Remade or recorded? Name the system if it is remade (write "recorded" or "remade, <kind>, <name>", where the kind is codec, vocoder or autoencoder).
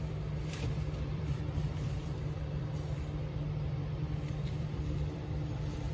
remade, vocoder, BigVGAN v2